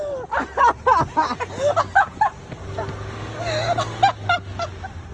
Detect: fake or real real